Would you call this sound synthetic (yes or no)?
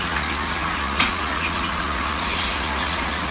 yes